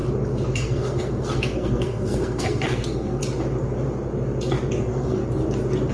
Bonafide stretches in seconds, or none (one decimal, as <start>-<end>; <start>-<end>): 0.0-0.5; 3.2-4.8; 5.2-5.9